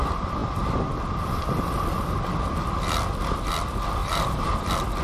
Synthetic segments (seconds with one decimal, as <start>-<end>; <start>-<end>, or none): 4.0-4.6